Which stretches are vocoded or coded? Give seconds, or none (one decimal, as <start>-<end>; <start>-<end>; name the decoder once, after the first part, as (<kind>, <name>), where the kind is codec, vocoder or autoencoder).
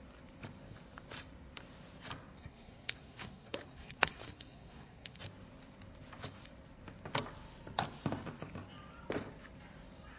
2.4-5.2 (codec, SNAC)